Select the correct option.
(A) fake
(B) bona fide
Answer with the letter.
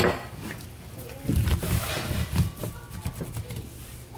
B